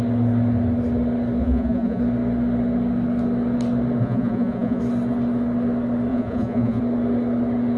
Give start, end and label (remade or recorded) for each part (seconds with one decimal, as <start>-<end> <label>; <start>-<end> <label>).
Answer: 0.0-1.4 recorded; 1.4-2.0 remade; 2.0-4.0 recorded; 4.0-4.8 remade; 4.8-6.1 recorded; 6.1-6.8 remade; 6.8-7.8 recorded